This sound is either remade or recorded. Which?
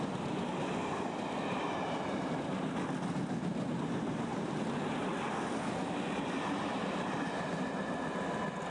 recorded